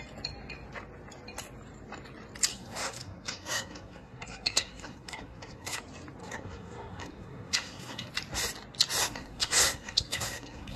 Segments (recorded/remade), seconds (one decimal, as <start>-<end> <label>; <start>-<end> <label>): 0.0-2.5 recorded; 2.5-5.8 remade; 5.8-6.2 recorded; 6.2-8.1 remade; 8.1-9.0 recorded; 9.0-10.8 remade